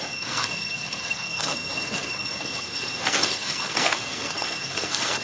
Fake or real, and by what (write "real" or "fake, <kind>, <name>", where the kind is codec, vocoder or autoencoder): fake, codec, SNAC